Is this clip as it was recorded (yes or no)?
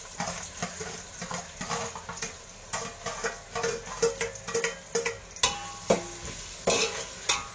yes